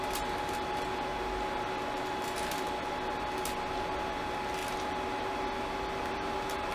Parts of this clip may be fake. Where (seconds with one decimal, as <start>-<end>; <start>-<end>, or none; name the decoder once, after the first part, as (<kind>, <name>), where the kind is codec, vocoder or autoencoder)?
none